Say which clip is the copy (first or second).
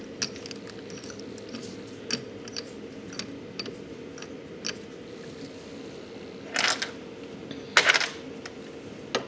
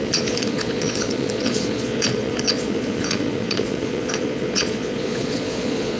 second